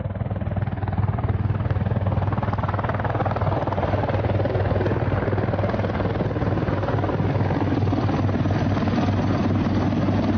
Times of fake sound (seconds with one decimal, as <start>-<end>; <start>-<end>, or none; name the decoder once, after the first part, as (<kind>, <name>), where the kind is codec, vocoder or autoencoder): none